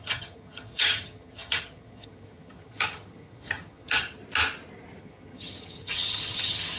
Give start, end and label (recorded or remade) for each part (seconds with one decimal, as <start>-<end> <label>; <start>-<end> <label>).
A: 0.0-4.2 remade; 4.2-5.0 recorded; 5.0-6.8 remade